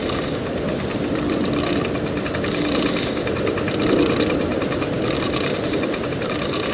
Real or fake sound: fake